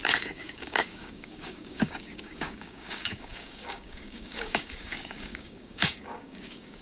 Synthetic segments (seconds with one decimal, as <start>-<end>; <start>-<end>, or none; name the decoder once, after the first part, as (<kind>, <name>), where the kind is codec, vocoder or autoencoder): 0.0-6.8 (codec, DAC)